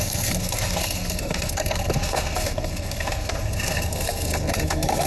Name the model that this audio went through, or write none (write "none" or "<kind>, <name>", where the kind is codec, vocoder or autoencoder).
codec, SNAC